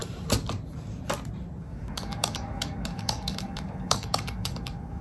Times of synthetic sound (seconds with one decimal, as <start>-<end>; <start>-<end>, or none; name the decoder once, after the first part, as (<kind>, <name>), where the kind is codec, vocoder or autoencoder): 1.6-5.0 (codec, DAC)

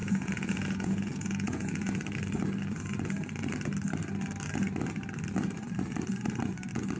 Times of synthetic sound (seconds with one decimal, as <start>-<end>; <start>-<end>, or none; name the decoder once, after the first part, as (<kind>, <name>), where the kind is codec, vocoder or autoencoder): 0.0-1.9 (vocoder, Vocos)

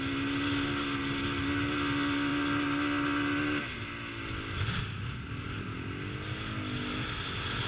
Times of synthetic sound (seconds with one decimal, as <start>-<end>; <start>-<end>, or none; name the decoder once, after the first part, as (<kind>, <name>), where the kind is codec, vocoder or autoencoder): none

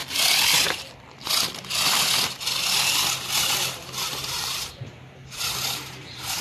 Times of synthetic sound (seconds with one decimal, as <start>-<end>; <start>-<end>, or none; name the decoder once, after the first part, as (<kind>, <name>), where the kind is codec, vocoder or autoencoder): 3.3-6.4 (vocoder, BigVGAN v2)